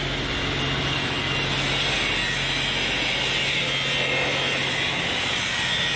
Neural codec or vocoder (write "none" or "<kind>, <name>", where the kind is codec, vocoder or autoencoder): none